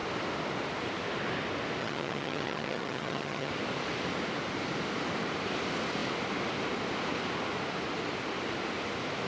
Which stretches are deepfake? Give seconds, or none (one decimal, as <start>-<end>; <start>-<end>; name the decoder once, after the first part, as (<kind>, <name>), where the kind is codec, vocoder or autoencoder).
1.8-3.5 (vocoder, HiFi-GAN)